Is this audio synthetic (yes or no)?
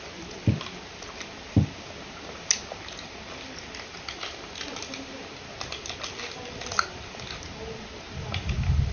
no